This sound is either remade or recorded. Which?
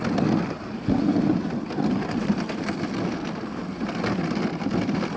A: recorded